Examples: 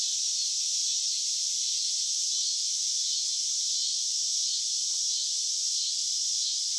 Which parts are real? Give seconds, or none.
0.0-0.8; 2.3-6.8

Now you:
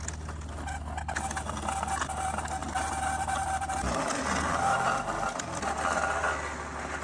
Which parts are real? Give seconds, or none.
0.0-2.6; 4.2-7.0